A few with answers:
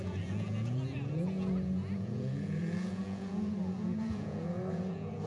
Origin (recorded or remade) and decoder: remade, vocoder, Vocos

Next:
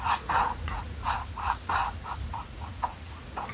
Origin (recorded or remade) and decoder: remade, vocoder, Vocos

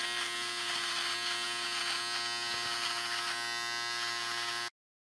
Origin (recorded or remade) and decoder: recorded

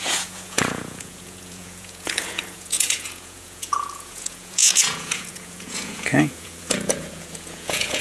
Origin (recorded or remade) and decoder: remade, vocoder, Vocos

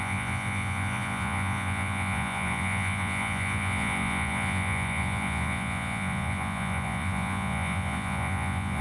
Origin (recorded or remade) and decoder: remade, vocoder, Vocos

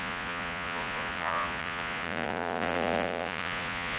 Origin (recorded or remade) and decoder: remade, vocoder, Vocos